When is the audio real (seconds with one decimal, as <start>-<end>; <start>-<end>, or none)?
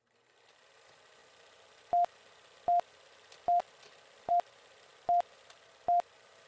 0.0-6.5